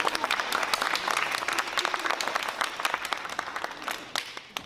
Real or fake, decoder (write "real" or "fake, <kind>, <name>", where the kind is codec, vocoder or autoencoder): real